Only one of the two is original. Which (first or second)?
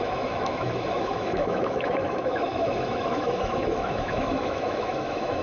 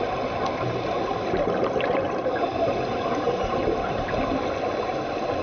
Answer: second